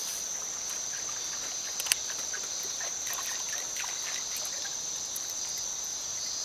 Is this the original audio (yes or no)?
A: yes